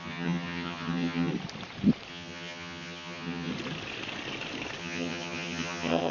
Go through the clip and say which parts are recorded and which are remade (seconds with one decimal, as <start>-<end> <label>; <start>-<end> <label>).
0.0-1.3 remade; 1.3-2.1 recorded; 2.1-3.5 remade; 3.5-4.8 recorded; 4.8-6.1 remade